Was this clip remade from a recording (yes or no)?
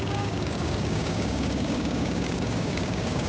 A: yes